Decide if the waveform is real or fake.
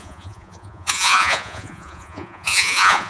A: fake